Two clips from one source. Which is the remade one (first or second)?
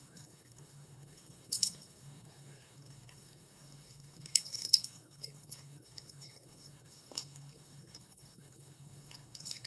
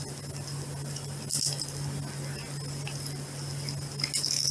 first